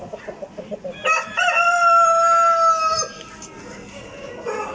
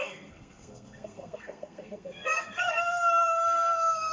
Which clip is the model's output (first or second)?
second